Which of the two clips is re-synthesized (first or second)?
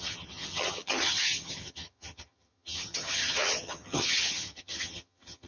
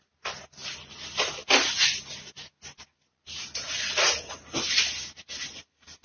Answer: first